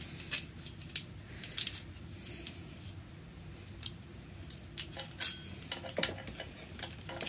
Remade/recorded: recorded